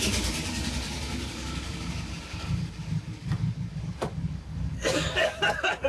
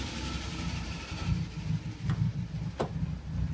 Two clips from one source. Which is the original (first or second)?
second